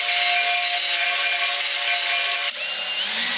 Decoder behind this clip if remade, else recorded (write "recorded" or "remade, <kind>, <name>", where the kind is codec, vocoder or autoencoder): recorded